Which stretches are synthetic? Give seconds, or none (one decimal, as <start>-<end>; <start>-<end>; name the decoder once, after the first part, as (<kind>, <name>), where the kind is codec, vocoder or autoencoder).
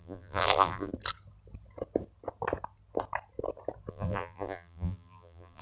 0.0-0.9 (vocoder, BigVGAN v2); 3.9-5.6